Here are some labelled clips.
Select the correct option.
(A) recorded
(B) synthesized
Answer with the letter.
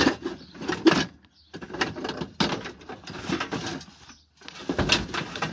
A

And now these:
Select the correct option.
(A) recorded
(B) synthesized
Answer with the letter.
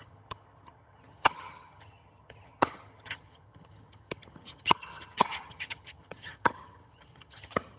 B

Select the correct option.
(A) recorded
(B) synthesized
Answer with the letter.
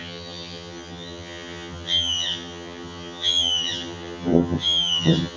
B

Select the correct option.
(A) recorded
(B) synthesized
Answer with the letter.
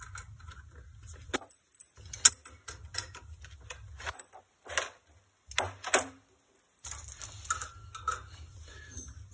A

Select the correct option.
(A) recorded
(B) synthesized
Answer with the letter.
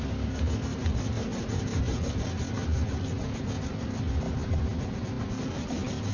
A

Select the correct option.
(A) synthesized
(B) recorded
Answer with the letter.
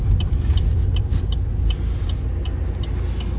B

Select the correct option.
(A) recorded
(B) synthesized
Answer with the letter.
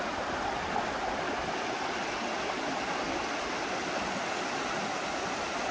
A